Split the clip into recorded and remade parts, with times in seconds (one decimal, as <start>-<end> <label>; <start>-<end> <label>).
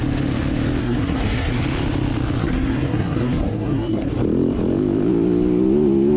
0.0-0.8 recorded; 0.8-1.6 remade; 1.6-2.4 recorded; 2.4-4.1 remade; 4.1-6.2 recorded